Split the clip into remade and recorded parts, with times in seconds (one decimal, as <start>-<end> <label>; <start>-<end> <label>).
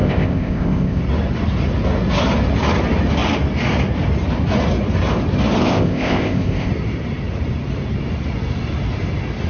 0.0-1.0 remade; 1.0-5.6 recorded; 5.6-6.7 remade; 6.7-9.5 recorded